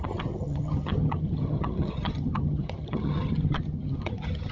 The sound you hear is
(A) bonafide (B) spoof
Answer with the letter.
B